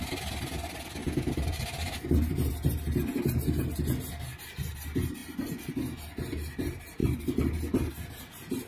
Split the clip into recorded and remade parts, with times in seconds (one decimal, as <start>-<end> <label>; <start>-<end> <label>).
0.0-1.0 recorded; 1.0-2.5 remade; 2.5-7.0 recorded; 7.0-7.9 remade; 7.9-8.7 recorded